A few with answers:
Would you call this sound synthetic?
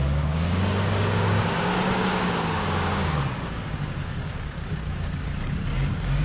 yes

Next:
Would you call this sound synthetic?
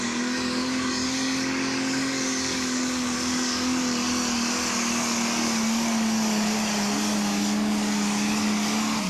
yes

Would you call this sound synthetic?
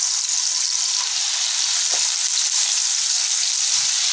no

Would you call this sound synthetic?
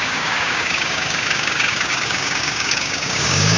yes